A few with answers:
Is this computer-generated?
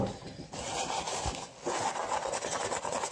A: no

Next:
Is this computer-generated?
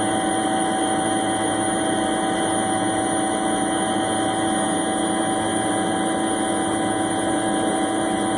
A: no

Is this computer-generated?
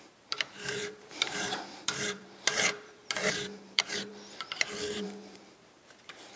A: yes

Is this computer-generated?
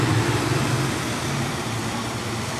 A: yes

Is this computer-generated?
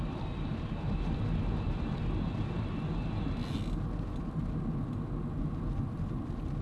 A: no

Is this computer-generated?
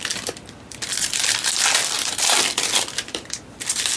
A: no